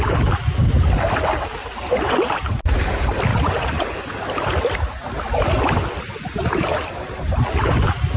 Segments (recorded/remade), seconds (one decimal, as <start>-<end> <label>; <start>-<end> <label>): 0.0-3.3 recorded; 3.3-4.0 remade; 4.0-8.2 recorded

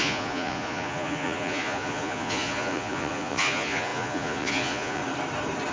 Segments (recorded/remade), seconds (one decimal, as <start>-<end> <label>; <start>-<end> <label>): 0.0-5.0 remade; 5.0-5.7 recorded

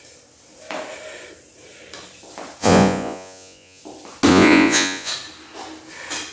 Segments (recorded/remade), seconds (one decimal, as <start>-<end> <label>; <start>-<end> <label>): 0.0-2.6 recorded; 2.6-3.8 remade; 3.8-4.3 recorded; 4.3-5.1 remade; 5.1-6.3 recorded

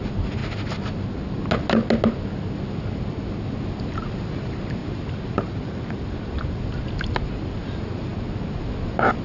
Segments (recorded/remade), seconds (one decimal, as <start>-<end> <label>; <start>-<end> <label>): 0.0-4.8 recorded; 4.8-6.6 remade; 6.6-9.2 recorded

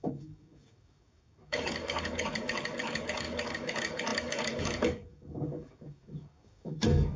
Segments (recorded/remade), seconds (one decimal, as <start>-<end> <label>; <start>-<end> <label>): 0.0-7.2 remade

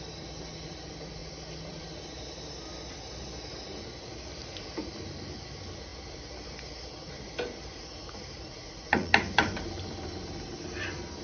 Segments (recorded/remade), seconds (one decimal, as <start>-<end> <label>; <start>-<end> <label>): 0.0-8.5 recorded; 8.5-9.1 remade; 9.1-11.2 recorded